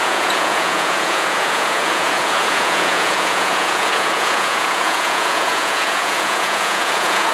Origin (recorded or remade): remade